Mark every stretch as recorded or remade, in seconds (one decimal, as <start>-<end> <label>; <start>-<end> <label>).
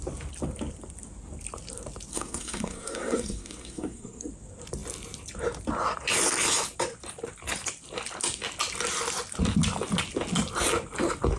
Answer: 0.0-2.1 recorded; 2.1-4.3 remade; 4.3-11.4 recorded